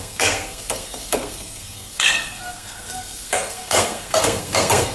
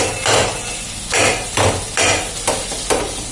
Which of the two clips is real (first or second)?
second